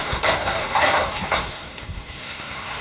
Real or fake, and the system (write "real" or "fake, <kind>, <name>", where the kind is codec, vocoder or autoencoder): fake, codec, SNAC